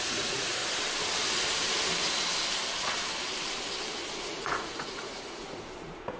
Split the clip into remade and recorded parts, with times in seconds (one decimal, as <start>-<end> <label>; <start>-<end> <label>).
0.0-0.6 remade; 0.6-4.2 recorded; 4.2-6.2 remade